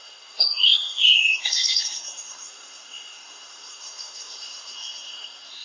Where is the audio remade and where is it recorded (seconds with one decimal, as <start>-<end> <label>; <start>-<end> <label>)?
0.0-5.6 remade